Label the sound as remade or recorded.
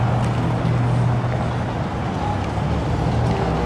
recorded